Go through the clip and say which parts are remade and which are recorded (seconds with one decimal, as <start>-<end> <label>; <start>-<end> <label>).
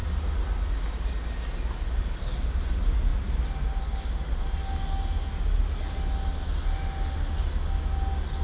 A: 0.0-8.4 recorded